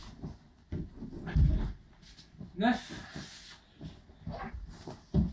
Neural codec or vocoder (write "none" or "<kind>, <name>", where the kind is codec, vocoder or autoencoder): none